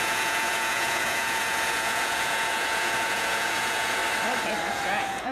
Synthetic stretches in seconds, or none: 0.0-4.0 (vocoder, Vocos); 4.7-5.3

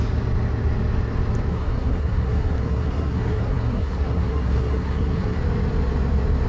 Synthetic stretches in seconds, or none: 1.5-5.4 (codec, SNAC)

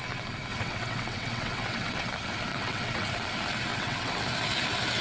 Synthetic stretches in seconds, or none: 0.5-2.1 (vocoder, WaveNeXt); 2.5-3.1; 3.7-4.2

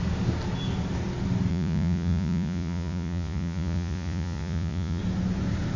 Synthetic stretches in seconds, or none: 1.5-5.0 (vocoder, Vocos)

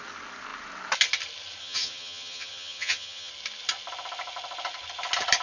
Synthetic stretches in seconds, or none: 1.6-3.3 (vocoder, HiFi-GAN)

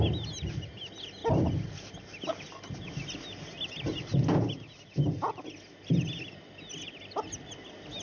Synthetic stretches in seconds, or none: none

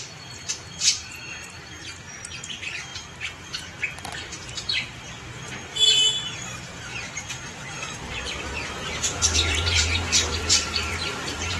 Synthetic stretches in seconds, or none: 0.0-11.6 (vocoder, BigVGAN v2)